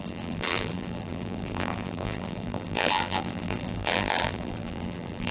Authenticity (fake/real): fake